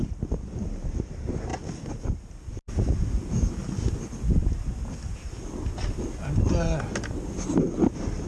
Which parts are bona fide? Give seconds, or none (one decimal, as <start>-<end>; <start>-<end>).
0.0-8.3